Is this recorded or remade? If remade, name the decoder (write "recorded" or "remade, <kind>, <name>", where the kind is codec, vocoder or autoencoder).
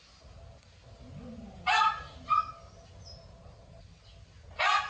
recorded